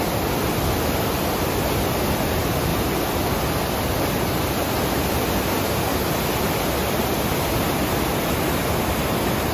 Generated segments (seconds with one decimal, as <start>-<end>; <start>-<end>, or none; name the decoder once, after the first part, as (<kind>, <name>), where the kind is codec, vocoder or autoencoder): none